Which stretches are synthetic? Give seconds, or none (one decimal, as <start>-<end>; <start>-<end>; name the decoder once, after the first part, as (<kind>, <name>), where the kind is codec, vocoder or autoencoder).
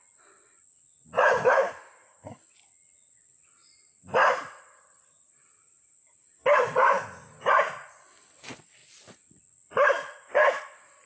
1.6-2.4 (vocoder, BigVGAN v2); 4.2-7.9